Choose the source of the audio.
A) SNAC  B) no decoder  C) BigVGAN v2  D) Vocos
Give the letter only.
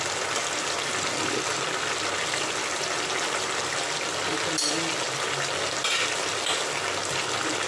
B